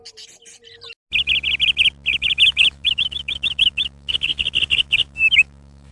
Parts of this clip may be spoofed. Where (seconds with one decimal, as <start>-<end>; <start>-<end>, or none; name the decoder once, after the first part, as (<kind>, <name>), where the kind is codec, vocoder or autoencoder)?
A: 2.1-5.9 (autoencoder, DAC-VAE)